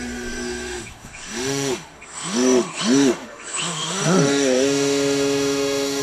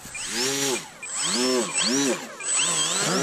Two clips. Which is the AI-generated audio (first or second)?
first